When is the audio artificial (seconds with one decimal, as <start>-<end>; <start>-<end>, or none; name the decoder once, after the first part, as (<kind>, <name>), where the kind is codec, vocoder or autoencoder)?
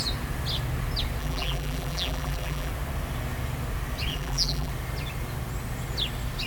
1.2-2.7 (vocoder, BigVGAN v2); 4.1-4.7